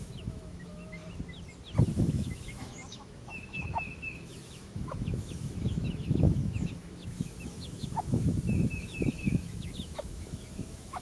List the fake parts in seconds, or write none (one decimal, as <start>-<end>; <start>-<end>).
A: 0.0-1.0; 2.0-11.0